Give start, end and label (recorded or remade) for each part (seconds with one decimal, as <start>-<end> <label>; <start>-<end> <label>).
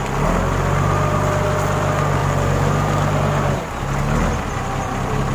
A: 0.0-5.3 recorded